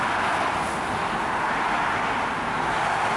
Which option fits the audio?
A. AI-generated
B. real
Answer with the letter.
B